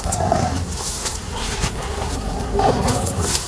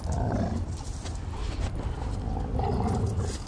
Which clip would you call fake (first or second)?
first